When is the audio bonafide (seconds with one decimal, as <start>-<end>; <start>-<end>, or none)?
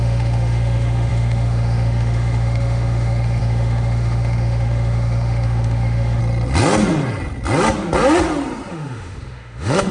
6.2-8.7